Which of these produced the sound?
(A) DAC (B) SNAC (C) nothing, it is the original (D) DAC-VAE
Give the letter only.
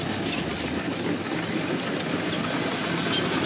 C